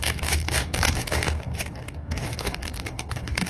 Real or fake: fake